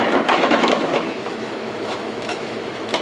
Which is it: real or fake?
fake